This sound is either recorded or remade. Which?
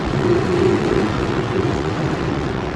remade